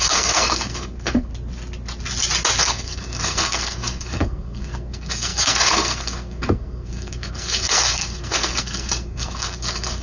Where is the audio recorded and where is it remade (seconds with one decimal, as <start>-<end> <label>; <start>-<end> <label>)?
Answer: 0.0-1.3 remade; 1.3-2.6 recorded; 2.6-10.0 remade